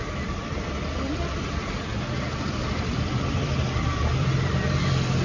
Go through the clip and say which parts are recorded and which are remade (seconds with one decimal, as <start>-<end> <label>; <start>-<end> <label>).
0.0-1.9 remade; 1.9-2.9 recorded; 2.9-5.2 remade